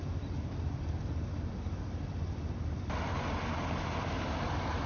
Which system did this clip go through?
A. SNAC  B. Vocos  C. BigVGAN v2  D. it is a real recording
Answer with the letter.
D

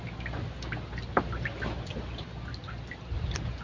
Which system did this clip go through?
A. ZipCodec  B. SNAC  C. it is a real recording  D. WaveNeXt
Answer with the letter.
C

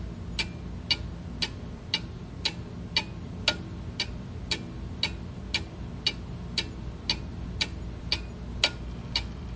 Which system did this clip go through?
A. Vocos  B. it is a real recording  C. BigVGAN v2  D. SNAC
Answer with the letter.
B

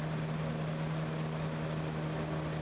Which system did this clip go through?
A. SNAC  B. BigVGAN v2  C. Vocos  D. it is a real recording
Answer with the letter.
D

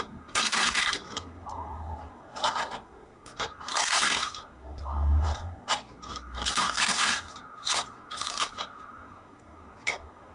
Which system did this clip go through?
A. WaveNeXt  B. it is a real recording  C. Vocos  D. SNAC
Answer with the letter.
D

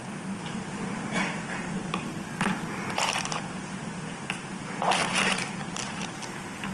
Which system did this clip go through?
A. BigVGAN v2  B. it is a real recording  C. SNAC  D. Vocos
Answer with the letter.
B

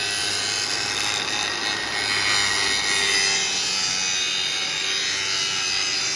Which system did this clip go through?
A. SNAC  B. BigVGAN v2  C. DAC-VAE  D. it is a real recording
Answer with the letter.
D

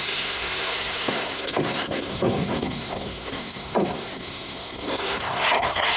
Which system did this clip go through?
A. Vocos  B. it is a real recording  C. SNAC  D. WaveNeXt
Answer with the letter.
C